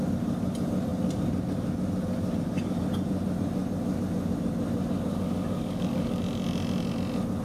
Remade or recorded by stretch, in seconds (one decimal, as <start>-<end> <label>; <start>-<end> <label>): 0.0-5.1 recorded; 5.1-6.2 remade; 6.2-7.4 recorded